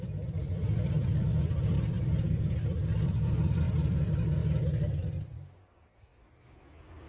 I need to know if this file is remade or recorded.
remade